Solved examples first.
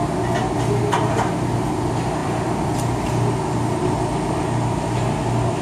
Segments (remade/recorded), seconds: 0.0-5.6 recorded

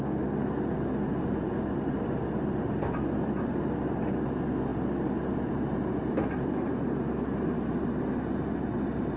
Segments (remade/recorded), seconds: 0.0-9.2 recorded

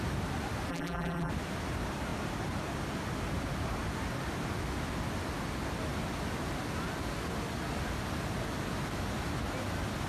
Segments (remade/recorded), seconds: 0.0-0.7 recorded; 0.7-1.3 remade; 1.3-10.1 recorded

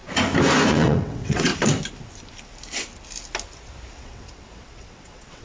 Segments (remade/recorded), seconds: 0.0-0.7 recorded; 0.7-1.5 remade; 1.5-3.9 recorded; 3.9-5.4 remade